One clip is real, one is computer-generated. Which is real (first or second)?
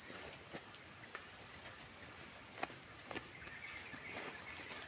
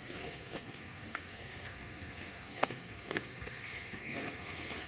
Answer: first